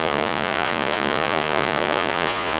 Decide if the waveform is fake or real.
fake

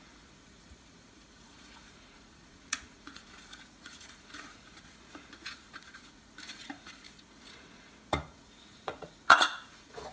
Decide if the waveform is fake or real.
fake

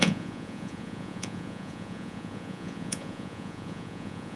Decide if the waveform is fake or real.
fake